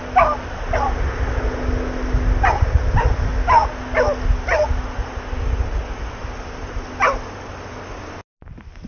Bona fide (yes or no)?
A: yes